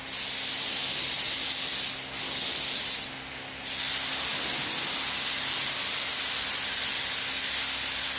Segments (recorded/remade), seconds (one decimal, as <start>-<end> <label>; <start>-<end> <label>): 0.0-8.2 recorded